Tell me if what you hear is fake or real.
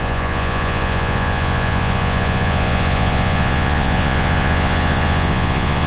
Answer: fake